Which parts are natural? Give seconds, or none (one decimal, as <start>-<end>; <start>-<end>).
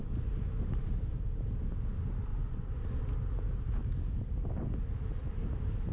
0.0-2.3; 2.8-5.9